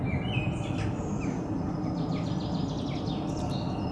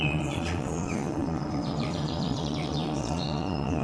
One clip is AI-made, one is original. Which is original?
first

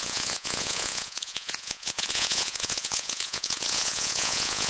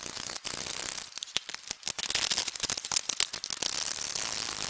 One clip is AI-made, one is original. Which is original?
second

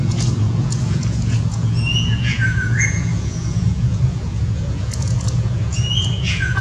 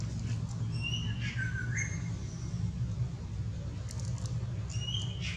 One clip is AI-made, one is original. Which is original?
second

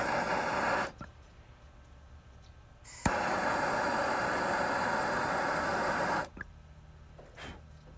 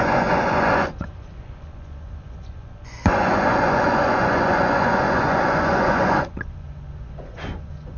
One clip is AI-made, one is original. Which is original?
first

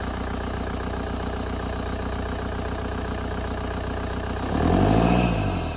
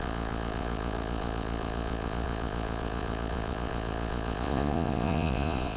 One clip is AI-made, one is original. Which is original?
first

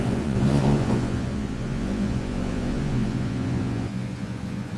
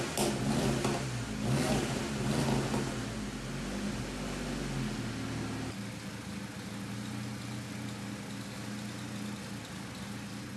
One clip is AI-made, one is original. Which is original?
second